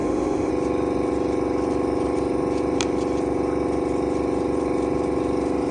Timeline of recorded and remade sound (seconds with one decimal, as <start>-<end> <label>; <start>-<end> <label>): 0.0-0.5 remade; 0.5-5.7 recorded